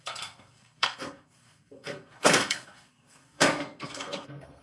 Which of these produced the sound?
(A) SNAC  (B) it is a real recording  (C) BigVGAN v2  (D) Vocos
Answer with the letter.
A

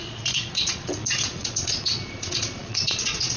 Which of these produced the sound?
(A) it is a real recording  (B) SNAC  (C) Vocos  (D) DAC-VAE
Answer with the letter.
C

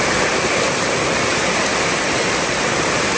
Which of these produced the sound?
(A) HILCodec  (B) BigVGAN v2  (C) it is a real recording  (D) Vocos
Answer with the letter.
C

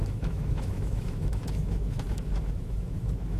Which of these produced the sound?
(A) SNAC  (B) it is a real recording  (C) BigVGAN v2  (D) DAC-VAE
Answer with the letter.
D